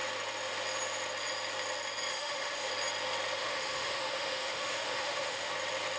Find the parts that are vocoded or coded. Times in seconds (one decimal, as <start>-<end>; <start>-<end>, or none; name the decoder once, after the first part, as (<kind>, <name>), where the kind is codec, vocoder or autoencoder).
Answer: 2.1-2.7 (autoencoder, DAC-VAE); 3.4-5.5